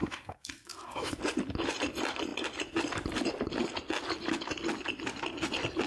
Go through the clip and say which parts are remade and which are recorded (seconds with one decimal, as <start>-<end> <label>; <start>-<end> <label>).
0.0-1.2 remade; 1.2-5.9 recorded